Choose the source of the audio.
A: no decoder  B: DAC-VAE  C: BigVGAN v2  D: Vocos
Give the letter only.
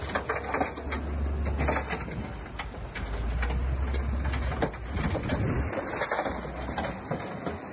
A